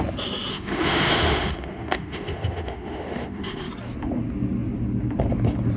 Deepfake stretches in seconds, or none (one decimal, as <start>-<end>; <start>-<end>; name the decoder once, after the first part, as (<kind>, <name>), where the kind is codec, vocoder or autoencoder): 0.5-3.7 (autoencoder, DAC-VAE)